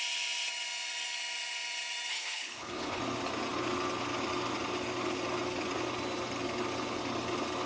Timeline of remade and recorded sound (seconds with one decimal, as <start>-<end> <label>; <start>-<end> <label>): 0.0-2.1 recorded; 2.1-3.0 remade; 3.0-7.7 recorded